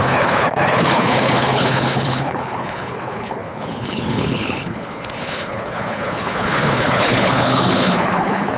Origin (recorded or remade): remade